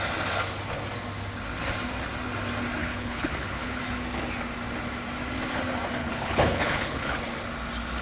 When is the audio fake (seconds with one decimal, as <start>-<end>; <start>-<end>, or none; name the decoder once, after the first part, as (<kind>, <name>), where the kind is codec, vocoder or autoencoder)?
2.8-3.8 (codec, HILCodec); 6.0-7.2